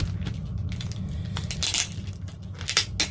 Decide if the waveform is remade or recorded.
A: recorded